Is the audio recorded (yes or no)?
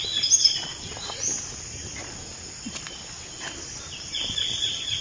yes